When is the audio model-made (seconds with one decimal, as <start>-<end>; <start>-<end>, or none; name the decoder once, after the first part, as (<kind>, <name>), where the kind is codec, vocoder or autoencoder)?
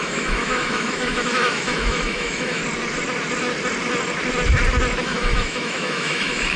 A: 0.0-2.6 (autoencoder, DAC-VAE); 5.0-6.6